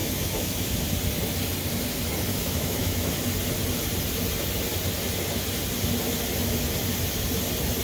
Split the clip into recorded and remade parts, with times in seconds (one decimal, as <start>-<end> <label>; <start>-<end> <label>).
0.0-0.8 remade; 0.8-2.3 recorded; 2.3-3.0 remade; 3.0-7.8 recorded